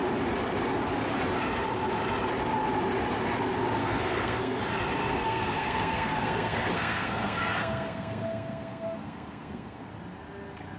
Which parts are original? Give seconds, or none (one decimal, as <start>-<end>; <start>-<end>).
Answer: 0.0-3.8; 4.6-5.0; 9.9-10.8

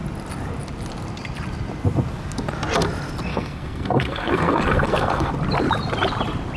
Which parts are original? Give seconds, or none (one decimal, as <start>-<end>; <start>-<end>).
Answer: 0.0-3.3; 5.3-6.6

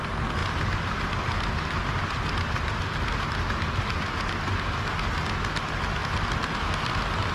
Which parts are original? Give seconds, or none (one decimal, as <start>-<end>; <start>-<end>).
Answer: 0.0-7.3

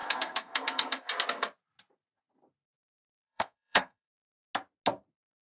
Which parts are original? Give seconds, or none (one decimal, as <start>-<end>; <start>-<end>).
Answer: 1.1-3.1; 4.1-5.4

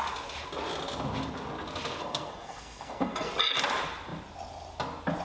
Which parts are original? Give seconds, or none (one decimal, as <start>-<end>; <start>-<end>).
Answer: 0.0-2.0; 3.3-5.2

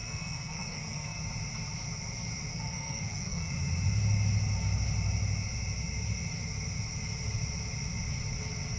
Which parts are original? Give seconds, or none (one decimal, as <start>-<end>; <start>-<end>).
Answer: 1.2-2.5; 3.5-8.8